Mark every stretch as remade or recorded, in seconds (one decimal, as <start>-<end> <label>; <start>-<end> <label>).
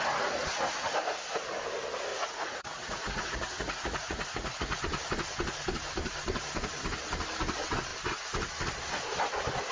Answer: 0.0-2.1 recorded; 2.1-4.8 remade; 4.8-9.7 recorded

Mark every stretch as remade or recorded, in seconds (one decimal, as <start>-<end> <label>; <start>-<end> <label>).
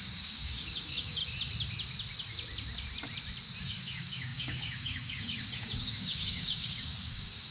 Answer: 0.0-1.2 remade; 1.2-3.6 recorded; 3.6-7.5 remade